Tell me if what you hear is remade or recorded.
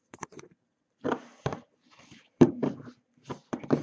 remade